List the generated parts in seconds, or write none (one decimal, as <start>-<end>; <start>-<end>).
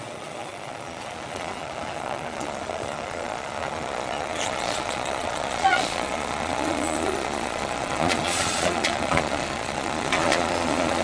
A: 0.0-11.0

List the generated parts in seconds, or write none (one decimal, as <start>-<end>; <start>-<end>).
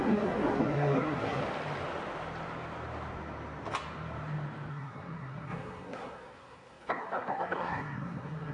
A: 0.0-1.4; 4.7-8.5